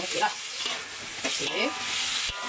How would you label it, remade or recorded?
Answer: recorded